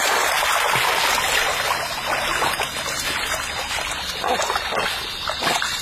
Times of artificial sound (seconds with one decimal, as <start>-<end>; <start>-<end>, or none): none